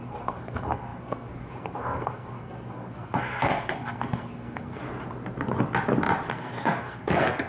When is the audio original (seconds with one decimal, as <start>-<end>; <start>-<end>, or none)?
4.8-6.3